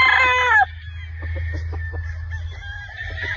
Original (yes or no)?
yes